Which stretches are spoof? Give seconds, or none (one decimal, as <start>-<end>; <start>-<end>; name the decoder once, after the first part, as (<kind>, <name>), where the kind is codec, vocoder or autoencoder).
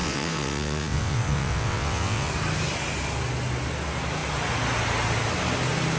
0.0-2.3 (vocoder, WaveNeXt)